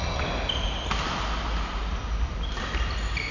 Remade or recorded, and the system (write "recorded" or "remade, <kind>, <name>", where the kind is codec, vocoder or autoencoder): recorded